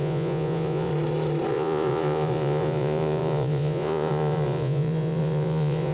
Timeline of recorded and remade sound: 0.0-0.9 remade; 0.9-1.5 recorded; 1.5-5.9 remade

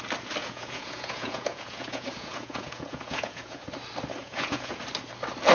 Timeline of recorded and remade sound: 0.0-0.4 recorded; 0.4-3.7 remade; 3.7-4.2 recorded; 4.2-4.8 remade; 4.8-5.5 recorded

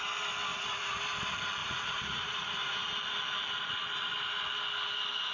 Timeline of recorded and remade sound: 0.0-0.5 recorded; 0.5-1.0 remade; 1.0-1.6 recorded; 1.6-2.9 remade; 2.9-5.3 recorded